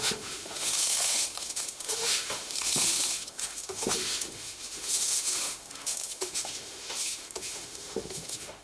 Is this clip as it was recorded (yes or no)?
no